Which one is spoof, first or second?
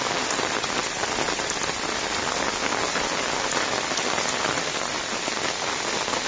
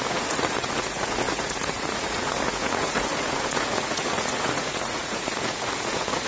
second